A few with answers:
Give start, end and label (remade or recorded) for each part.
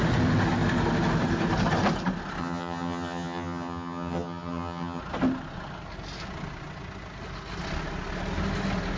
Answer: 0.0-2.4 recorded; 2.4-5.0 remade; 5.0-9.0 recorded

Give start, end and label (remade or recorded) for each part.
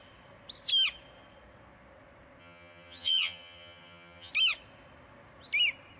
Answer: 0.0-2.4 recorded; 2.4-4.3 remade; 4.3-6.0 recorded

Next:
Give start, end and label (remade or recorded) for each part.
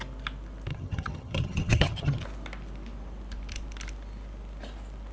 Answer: 0.0-0.7 recorded; 0.7-2.2 remade; 2.2-5.1 recorded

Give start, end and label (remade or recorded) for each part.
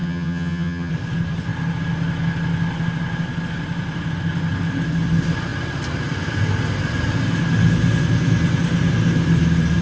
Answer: 0.0-0.9 remade; 0.9-9.8 recorded